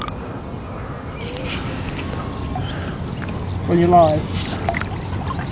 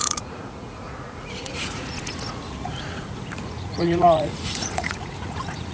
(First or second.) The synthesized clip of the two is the second